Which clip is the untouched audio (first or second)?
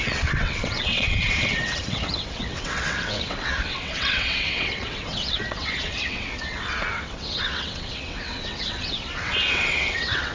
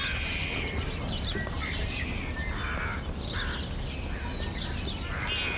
second